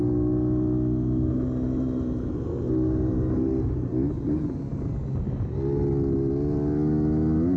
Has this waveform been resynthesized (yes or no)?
no